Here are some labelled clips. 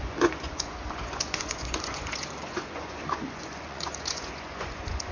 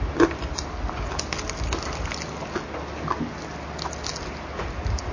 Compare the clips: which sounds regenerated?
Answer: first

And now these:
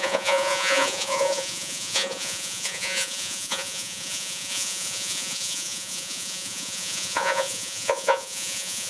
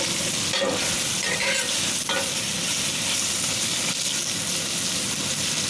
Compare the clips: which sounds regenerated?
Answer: first